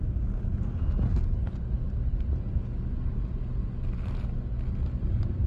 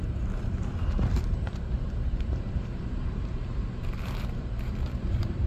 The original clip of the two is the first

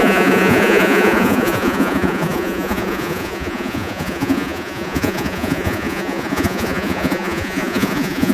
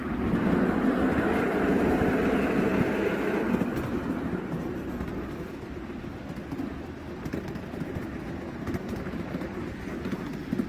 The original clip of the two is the second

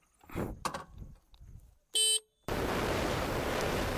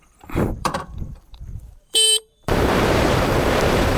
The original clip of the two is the first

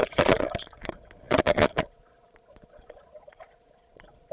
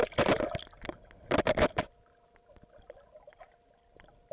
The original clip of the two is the second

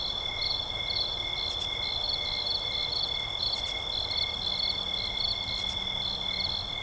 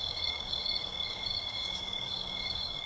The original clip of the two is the first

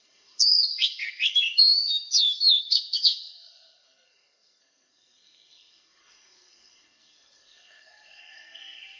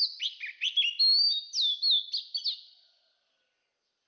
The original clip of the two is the second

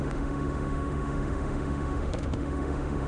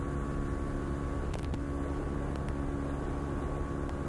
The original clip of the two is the second